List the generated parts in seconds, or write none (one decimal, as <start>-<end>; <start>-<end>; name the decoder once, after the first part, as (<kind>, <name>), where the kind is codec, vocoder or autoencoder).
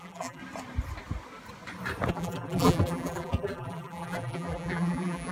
0.0-0.4 (vocoder, BigVGAN v2); 2.1-5.3